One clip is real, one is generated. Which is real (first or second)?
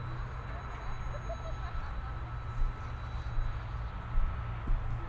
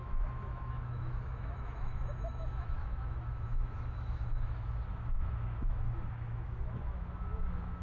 first